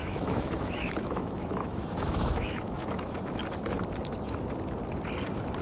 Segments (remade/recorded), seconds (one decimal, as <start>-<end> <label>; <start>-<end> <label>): 0.0-3.4 remade; 3.4-5.6 recorded